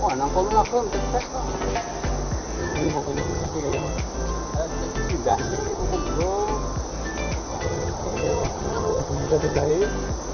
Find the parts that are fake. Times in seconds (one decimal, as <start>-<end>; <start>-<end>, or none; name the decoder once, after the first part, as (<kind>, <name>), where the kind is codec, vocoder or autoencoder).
2.6-3.9 (vocoder, HiFi-GAN); 5.3-5.8; 7.5-9.7